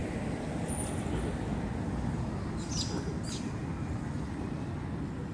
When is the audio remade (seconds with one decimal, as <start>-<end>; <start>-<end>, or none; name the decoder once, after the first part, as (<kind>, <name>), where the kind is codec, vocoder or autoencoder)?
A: none